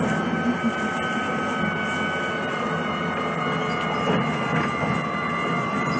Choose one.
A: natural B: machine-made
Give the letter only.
A